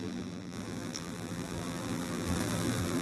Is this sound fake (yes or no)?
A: yes